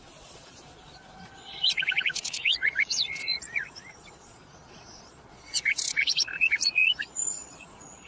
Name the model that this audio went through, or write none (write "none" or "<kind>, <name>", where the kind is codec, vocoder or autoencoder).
vocoder, Vocos